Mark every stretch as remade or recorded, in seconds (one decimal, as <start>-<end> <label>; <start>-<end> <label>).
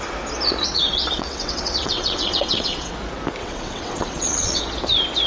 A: 0.0-0.6 recorded; 0.6-2.9 remade; 2.9-3.4 recorded; 3.4-4.6 remade; 4.6-5.3 recorded